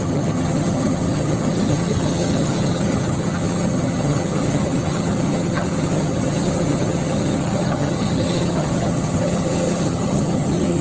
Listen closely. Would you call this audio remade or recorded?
remade